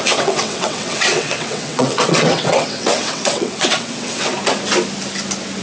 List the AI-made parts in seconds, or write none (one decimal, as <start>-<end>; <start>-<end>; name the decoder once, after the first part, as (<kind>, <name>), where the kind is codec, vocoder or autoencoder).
0.0-4.3 (vocoder, WaveNeXt)